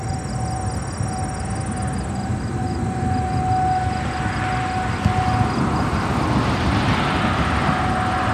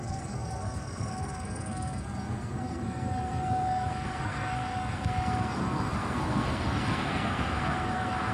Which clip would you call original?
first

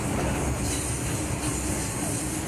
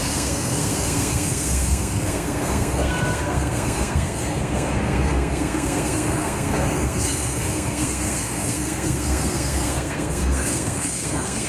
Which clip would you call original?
first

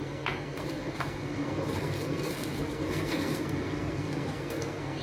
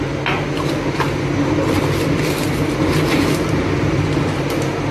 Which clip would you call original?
second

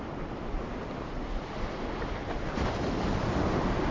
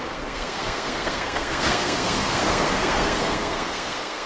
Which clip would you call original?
first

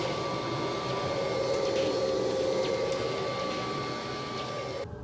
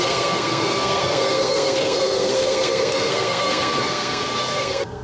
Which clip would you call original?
first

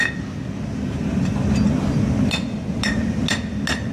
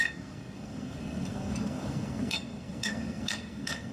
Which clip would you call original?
first